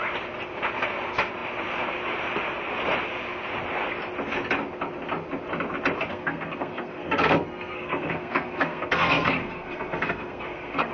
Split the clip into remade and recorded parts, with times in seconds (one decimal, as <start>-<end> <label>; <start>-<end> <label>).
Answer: 0.0-6.1 recorded; 6.1-10.9 remade